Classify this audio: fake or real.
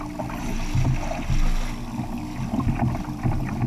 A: real